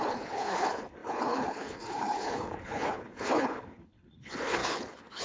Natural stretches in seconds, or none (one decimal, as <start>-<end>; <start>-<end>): none